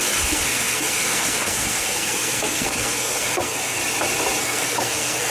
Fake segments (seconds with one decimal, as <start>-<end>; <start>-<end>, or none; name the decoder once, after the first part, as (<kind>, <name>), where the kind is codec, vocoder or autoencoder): 0.0-3.8 (codec, SNAC); 4.4-5.3